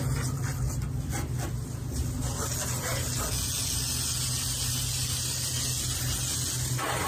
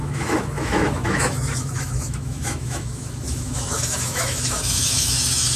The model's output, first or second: second